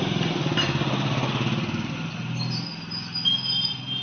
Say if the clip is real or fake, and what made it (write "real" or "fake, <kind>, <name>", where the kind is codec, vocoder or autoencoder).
real